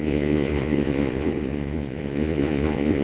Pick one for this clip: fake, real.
fake